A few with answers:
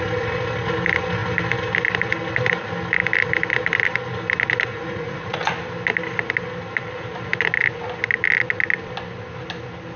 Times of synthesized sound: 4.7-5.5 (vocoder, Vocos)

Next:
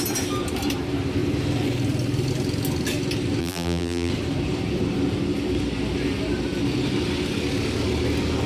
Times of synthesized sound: 3.4-4.1 (vocoder, BigVGAN v2)

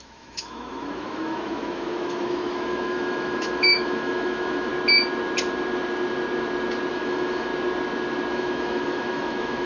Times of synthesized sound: 0.0-4.7 (autoencoder, DAC-VAE); 6.9-7.5; 8.3-9.7

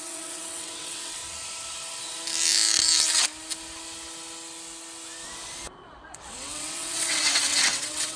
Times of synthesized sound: 0.0-1.2 (vocoder, WaveNeXt); 6.1-8.2